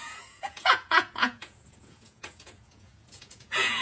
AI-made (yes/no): yes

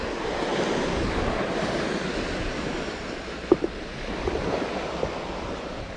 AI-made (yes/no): no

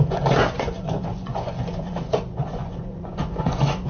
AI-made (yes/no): yes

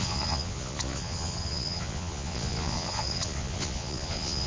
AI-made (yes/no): yes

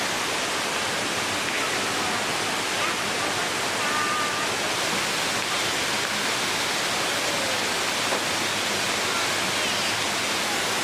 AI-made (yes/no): no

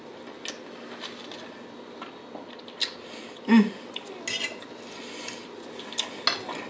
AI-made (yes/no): no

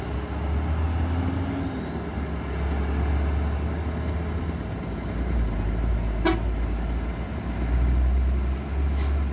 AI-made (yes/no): no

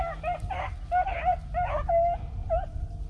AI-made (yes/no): no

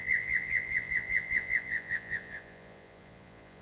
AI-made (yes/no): yes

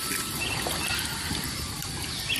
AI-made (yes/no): no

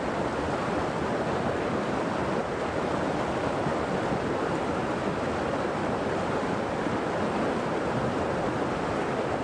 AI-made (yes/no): no